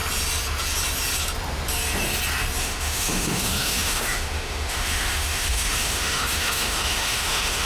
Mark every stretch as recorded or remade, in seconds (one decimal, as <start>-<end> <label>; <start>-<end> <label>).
0.0-2.6 recorded; 2.6-7.7 remade